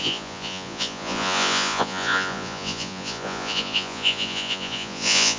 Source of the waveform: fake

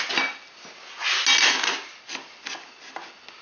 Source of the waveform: real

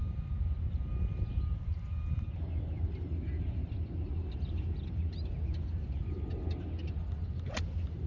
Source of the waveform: real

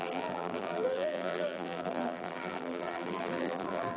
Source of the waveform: fake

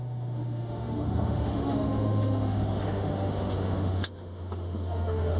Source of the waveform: fake